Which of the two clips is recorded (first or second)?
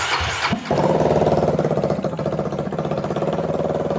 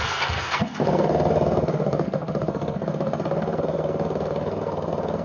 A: first